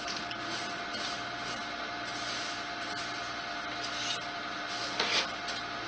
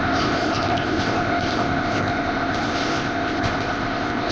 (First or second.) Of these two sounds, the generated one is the second